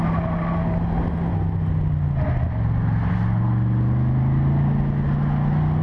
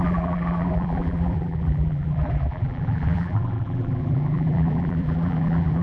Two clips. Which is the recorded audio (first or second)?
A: first